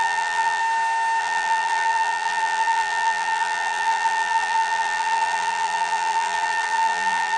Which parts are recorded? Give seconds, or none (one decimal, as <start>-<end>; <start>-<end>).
0.6-1.2